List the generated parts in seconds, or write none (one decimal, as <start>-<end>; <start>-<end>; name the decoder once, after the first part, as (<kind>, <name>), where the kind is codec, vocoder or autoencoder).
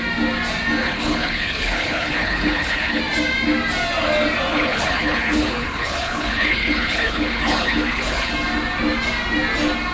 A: 0.8-3.0 (codec, HILCodec); 4.5-8.3